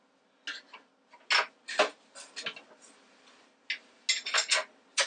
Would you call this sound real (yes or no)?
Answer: yes